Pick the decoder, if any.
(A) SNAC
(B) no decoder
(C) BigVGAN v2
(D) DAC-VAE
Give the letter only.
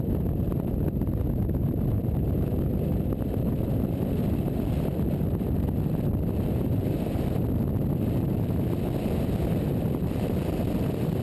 B